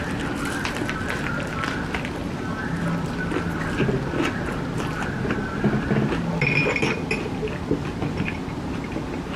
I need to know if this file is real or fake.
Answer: real